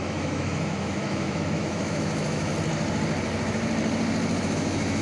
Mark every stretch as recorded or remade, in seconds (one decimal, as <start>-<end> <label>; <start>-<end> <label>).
0.0-2.5 remade; 2.5-4.4 recorded; 4.4-5.0 remade